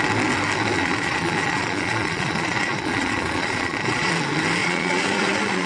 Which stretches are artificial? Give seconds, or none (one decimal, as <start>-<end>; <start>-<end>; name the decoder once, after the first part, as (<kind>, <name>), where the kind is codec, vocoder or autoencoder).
0.7-4.1 (vocoder, Vocos); 4.6-5.7